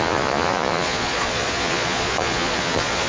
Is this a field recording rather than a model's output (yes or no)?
no